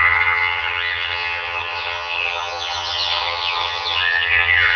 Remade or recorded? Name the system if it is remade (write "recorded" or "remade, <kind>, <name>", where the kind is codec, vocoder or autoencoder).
remade, vocoder, HiFi-GAN